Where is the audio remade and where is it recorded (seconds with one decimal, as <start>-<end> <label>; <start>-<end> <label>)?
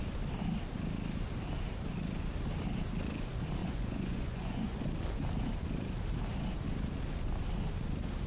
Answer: 0.0-3.6 recorded; 3.6-4.8 remade; 4.8-8.3 recorded